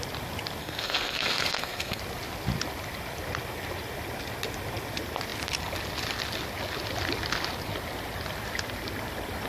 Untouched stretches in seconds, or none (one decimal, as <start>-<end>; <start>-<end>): 0.0-0.6; 2.0-9.5